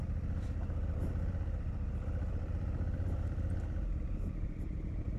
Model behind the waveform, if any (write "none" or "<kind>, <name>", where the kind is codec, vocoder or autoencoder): vocoder, BigVGAN v2